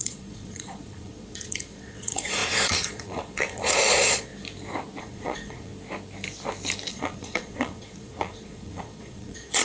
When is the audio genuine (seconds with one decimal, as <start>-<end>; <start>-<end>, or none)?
4.3-5.0; 5.7-6.9